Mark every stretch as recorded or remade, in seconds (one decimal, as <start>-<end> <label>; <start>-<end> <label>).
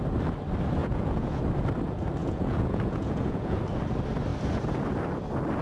0.0-0.8 recorded; 0.8-1.4 remade; 1.4-2.2 recorded; 2.2-3.6 remade; 3.6-5.6 recorded